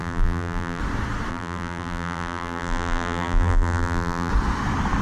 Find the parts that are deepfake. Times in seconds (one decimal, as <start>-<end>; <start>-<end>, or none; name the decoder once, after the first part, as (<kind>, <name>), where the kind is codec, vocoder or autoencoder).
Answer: 0.0-0.8 (vocoder, BigVGAN v2); 1.3-4.3

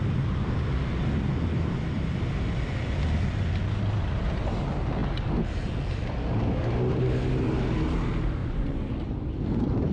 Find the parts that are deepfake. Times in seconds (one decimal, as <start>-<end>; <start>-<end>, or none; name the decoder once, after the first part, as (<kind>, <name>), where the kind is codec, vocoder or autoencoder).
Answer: 8.4-8.9 (vocoder, Vocos)

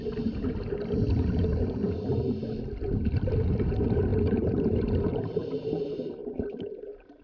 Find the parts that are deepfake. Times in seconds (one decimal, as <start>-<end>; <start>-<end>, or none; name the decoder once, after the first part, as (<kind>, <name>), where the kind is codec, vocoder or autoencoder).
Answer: 1.5-2.2 (vocoder, BigVGAN v2); 4.1-5.4; 6.2-7.2

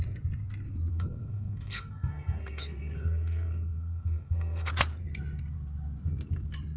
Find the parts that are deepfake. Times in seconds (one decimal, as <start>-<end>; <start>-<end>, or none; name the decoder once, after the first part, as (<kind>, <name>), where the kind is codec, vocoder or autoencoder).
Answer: 0.9-4.7 (codec, SNAC)

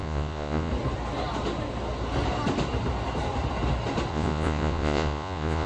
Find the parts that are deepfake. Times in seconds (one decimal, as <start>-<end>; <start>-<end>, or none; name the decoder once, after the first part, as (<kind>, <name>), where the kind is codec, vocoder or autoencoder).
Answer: 0.0-0.7 (vocoder, Vocos); 4.1-5.7

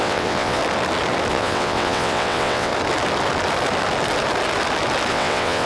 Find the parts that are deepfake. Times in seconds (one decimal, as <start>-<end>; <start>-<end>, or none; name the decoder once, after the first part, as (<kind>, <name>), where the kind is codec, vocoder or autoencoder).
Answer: 0.0-0.6 (vocoder, WaveNeXt); 1.3-2.7; 5.1-5.7

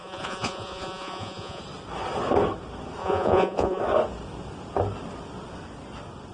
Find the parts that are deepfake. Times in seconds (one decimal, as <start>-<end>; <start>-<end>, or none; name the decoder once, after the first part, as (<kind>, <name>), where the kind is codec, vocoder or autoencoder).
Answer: 0.0-1.6 (vocoder, Vocos); 3.0-3.8